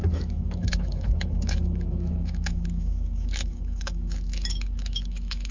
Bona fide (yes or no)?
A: no